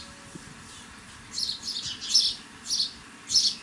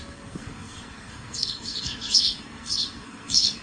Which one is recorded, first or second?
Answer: first